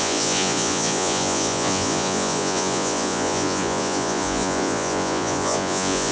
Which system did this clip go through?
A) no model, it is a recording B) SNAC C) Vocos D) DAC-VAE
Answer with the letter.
C